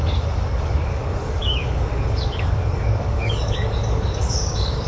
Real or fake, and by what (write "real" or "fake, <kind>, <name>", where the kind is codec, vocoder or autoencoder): fake, codec, DAC